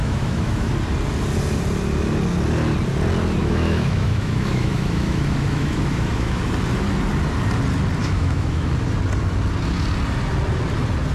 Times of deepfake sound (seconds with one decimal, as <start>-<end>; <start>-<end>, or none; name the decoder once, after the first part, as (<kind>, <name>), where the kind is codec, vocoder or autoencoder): 0.0-0.7 (autoencoder, DAC-VAE); 3.4-6.4; 8.0-8.7